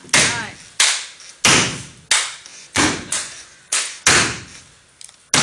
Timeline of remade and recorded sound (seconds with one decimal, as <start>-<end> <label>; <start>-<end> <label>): 0.0-2.5 recorded; 2.5-4.0 remade; 4.0-5.4 recorded